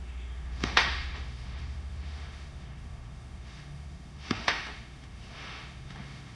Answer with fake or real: fake